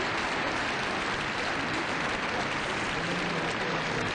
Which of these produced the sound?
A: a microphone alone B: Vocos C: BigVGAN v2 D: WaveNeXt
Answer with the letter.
A